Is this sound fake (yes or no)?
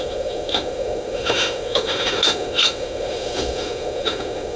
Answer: yes